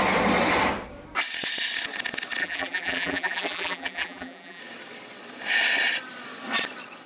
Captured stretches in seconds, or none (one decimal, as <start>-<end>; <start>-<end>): 0.0-2.4; 4.6-7.1